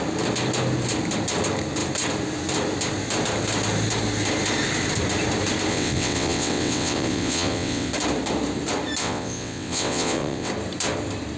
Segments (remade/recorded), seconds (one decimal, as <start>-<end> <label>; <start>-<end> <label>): 0.0-5.7 recorded; 5.7-7.9 remade; 7.9-9.0 recorded; 9.0-10.5 remade; 10.5-11.4 recorded